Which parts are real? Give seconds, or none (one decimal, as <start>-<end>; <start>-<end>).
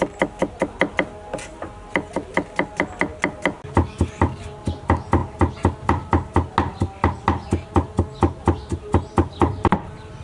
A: 0.0-10.2